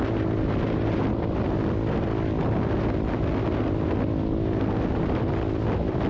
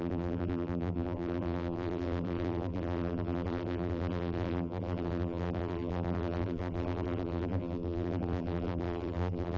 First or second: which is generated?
second